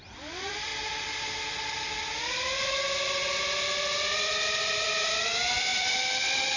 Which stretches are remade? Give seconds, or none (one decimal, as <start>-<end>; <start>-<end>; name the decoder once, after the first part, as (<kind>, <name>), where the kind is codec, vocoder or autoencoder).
0.0-0.7 (vocoder, BigVGAN v2); 4.6-6.6